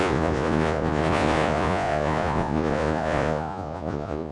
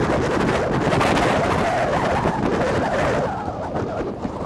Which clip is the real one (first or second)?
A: second